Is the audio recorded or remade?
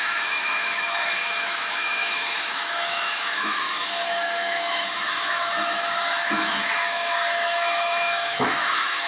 remade